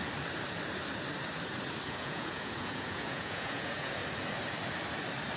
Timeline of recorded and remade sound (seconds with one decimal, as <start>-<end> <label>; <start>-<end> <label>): 0.0-1.9 recorded; 1.9-4.0 remade; 4.0-5.4 recorded